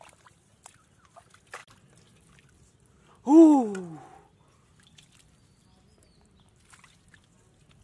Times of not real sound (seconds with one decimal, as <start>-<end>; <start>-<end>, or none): none